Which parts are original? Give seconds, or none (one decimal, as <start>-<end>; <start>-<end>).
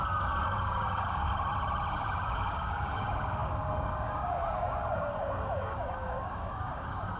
1.3-1.9